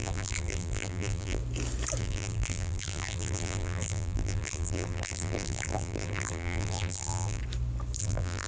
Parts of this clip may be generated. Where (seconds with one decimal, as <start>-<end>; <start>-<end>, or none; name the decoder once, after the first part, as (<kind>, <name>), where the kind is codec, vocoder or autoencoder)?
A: 0.0-1.4 (vocoder, BigVGAN v2); 2.0-7.4; 8.0-8.5